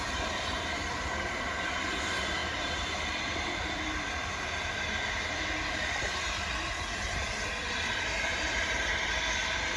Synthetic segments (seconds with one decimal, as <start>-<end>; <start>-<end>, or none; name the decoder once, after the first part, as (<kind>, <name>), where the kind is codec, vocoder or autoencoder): 0.0-9.8 (vocoder, BigVGAN v2)